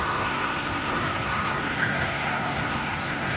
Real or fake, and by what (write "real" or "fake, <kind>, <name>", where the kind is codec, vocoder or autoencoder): fake, codec, SNAC